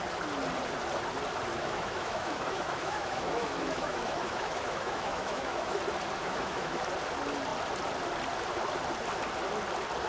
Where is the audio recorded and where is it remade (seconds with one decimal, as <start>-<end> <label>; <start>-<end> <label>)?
0.0-1.5 recorded; 1.5-5.8 remade; 5.8-6.2 recorded; 6.2-6.8 remade; 6.8-10.1 recorded

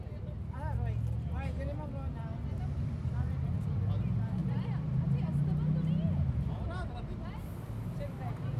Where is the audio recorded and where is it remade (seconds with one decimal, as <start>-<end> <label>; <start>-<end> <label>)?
0.0-8.6 recorded